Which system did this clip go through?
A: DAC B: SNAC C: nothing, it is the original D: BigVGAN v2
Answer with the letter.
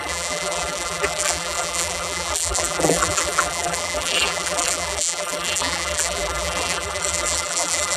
D